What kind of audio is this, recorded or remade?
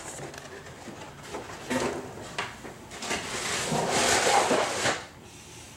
recorded